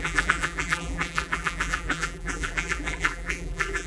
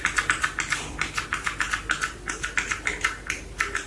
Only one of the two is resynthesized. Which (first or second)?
first